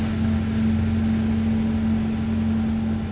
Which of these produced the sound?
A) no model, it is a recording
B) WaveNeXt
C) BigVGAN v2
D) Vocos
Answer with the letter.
A